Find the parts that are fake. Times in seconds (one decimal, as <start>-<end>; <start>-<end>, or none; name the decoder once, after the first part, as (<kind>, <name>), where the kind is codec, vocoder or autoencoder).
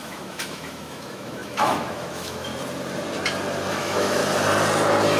0.0-2.5 (autoencoder, DAC-VAE); 3.7-4.2